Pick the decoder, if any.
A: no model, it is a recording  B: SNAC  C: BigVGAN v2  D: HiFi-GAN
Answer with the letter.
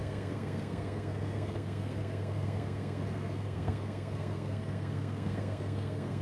B